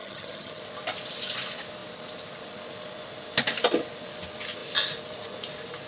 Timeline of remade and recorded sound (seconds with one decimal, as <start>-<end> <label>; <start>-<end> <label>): 0.0-0.6 remade; 0.6-5.9 recorded